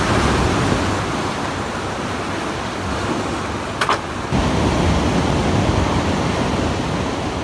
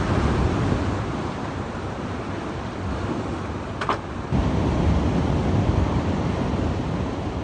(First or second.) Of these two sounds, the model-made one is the second